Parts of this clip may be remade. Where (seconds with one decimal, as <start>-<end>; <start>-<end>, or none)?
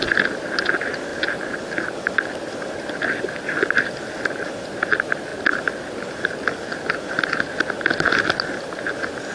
none